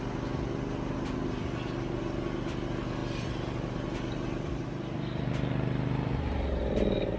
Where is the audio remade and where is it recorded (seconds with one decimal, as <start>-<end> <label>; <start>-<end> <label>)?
0.0-7.2 recorded